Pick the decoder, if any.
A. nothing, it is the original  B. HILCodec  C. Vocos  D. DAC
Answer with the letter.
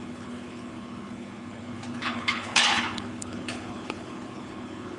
B